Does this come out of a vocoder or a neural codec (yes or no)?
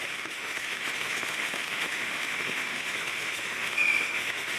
yes